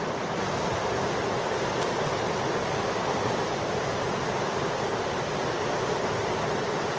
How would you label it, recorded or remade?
recorded